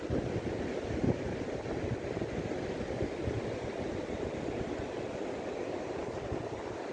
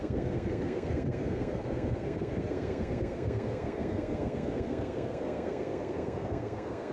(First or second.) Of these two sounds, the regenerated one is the second